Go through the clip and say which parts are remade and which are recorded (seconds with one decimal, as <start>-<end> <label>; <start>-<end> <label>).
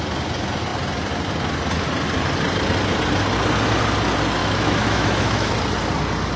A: 0.0-4.4 recorded; 4.4-5.5 remade; 5.5-6.4 recorded